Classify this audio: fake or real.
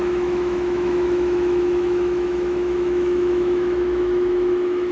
fake